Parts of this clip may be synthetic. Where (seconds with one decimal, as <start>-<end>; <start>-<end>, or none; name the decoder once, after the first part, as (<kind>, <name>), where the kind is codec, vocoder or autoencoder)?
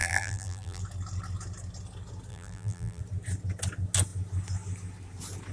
0.0-0.8 (vocoder, BigVGAN v2); 2.3-3.0